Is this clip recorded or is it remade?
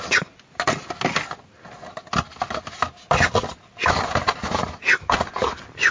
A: recorded